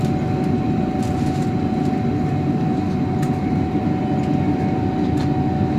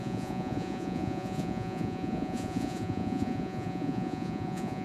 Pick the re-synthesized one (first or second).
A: second